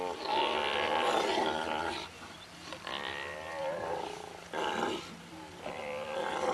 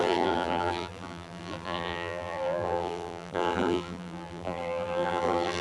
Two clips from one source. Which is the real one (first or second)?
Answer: first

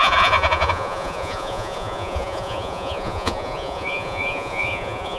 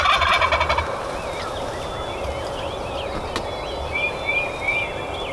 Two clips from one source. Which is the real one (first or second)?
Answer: second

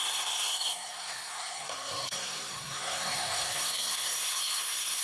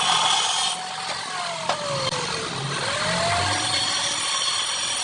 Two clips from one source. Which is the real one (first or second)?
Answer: second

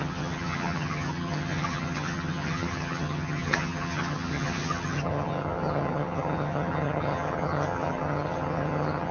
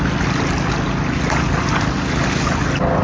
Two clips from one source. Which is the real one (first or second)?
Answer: second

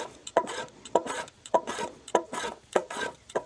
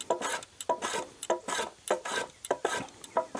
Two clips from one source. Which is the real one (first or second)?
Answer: second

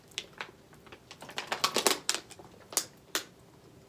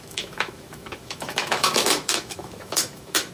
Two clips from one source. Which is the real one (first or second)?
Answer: first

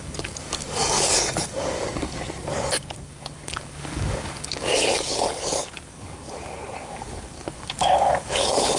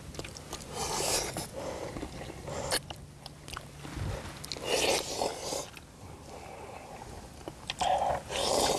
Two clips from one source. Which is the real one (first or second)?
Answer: second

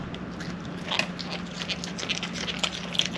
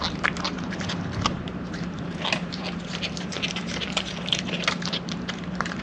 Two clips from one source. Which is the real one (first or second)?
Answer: first